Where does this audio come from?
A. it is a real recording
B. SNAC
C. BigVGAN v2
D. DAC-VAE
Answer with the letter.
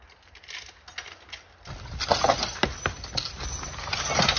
A